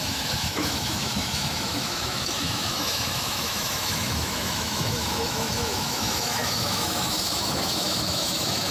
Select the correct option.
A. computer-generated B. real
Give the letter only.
A